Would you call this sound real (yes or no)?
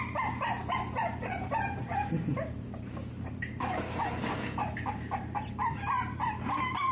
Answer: no